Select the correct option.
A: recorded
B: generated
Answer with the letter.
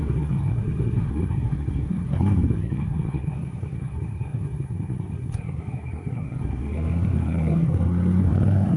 B